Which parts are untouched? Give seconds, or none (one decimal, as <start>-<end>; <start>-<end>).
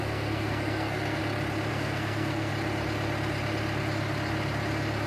1.2-1.7; 2.5-5.1